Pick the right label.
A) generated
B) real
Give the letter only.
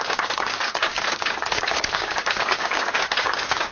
A